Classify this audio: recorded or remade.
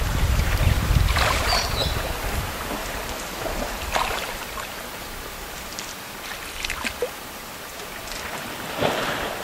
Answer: remade